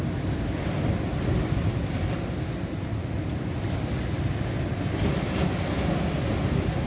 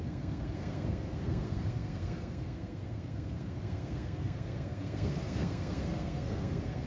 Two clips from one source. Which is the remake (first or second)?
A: second